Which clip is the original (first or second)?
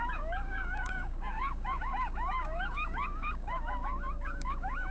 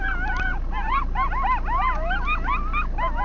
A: second